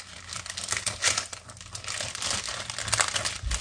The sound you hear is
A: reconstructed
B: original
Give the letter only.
B